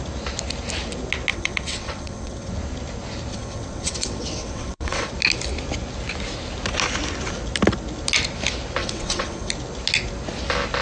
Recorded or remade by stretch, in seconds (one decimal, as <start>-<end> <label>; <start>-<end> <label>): 0.0-1.3 recorded; 1.3-2.5 remade; 2.5-3.3 recorded; 3.3-5.1 remade; 5.1-8.8 recorded; 8.8-9.5 remade; 9.5-10.8 recorded